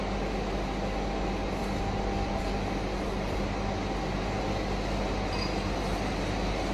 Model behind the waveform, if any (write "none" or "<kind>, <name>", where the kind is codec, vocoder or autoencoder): none